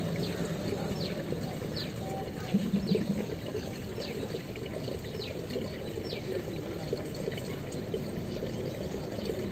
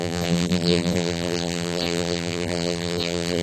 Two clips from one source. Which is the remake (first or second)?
second